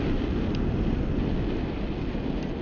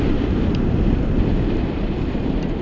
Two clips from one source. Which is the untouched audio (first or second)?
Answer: first